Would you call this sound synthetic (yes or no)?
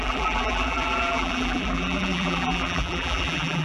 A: yes